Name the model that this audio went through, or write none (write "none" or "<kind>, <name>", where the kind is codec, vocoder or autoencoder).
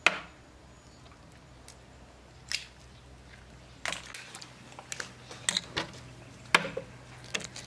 none